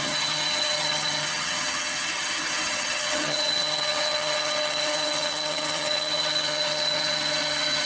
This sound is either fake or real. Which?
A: fake